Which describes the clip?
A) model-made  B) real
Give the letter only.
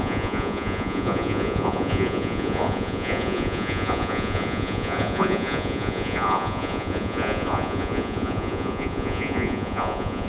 A